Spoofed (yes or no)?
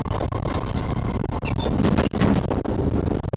no